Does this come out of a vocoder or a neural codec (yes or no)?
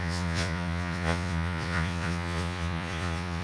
yes